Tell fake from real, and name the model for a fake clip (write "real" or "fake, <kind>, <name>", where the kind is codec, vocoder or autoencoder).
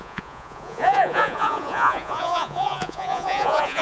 fake, vocoder, Vocos